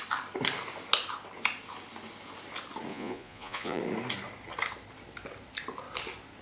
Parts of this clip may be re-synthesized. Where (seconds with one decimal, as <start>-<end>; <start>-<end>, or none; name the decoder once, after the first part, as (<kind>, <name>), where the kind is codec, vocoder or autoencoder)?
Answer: 2.9-3.8 (vocoder, Vocos)